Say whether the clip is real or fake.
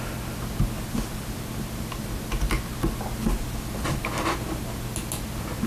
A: real